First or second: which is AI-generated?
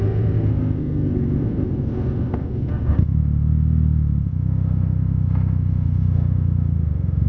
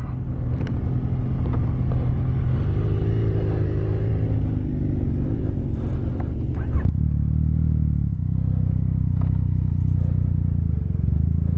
first